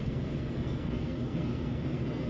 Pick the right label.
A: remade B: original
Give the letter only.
A